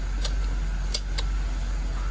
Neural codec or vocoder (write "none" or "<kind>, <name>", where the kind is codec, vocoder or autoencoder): none